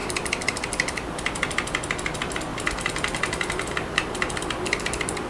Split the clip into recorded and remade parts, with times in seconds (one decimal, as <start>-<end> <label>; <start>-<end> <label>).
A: 0.0-1.1 remade; 1.1-2.5 recorded; 2.5-4.8 remade; 4.8-5.3 recorded